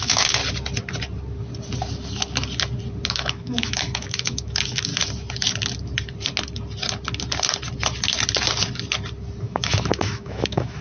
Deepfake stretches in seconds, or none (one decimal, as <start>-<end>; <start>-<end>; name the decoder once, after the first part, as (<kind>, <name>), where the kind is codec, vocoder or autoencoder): 0.0-0.4 (autoencoder, DAC-VAE); 3.1-4.9; 9.4-10.8